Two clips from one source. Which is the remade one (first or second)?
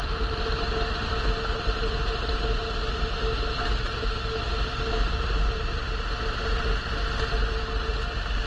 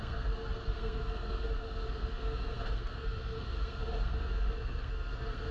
second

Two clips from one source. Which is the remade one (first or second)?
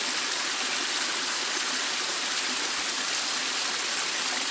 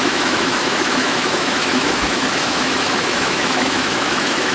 second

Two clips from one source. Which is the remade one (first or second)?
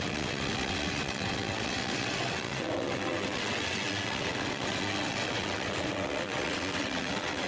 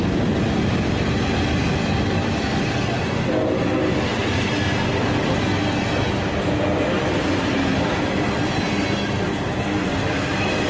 first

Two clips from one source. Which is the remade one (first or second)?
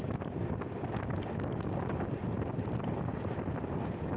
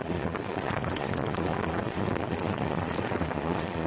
second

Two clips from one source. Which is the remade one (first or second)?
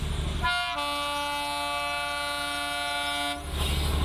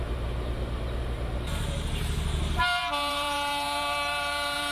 second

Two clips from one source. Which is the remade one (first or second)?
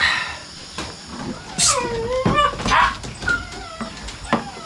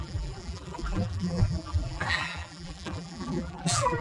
second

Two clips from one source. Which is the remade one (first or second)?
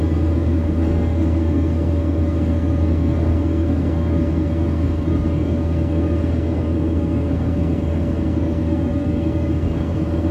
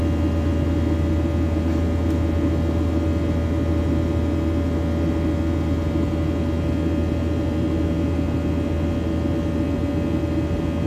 first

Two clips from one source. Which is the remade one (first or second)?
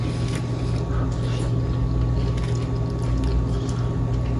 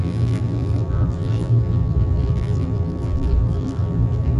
second